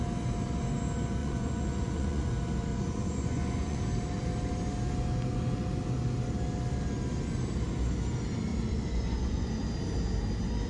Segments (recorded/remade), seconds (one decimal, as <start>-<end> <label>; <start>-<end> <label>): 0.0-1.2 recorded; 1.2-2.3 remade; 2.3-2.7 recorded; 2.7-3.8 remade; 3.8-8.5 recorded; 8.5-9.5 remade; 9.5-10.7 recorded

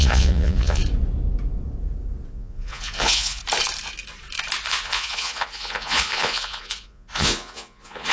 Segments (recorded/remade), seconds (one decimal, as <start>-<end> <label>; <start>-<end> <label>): 0.0-0.8 remade; 0.8-2.3 recorded; 2.3-3.4 remade; 3.4-4.6 recorded; 4.6-8.1 remade

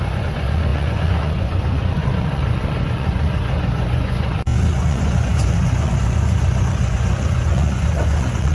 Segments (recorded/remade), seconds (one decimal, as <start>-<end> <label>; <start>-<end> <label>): 0.0-8.5 remade

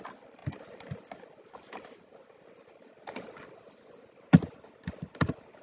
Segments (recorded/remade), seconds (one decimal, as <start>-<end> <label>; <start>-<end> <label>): 0.0-5.6 recorded

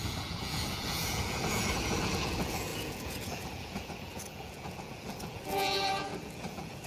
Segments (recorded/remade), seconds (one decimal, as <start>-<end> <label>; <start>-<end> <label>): 0.0-6.9 remade

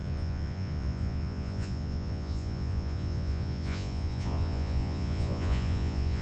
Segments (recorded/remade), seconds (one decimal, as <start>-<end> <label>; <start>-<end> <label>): 0.0-6.2 remade

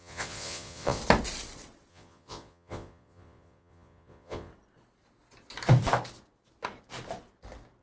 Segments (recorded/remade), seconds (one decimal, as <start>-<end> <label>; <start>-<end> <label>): 0.0-1.0 remade; 1.0-1.9 recorded; 1.9-4.5 remade; 4.5-7.8 recorded

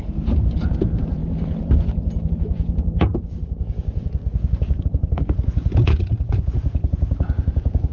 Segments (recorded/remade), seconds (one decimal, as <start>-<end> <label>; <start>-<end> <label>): 0.0-1.2 remade; 1.2-2.3 recorded; 2.3-4.2 remade; 4.2-4.8 recorded; 4.8-7.9 remade